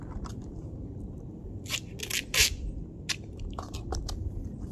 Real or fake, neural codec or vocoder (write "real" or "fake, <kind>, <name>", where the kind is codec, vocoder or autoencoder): real